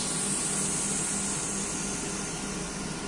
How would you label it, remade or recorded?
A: recorded